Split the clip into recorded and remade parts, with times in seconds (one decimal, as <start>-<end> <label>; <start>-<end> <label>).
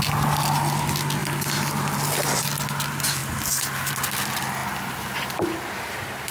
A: 0.0-6.3 recorded